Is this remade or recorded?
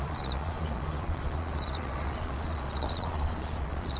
remade